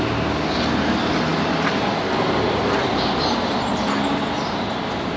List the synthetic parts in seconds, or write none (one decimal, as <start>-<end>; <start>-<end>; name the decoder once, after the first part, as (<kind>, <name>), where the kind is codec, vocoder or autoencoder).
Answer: none